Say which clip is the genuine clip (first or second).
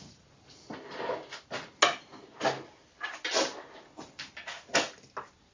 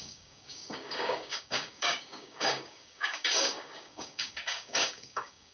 first